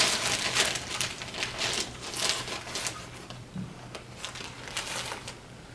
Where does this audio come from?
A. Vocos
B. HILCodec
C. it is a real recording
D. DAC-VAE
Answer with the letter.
C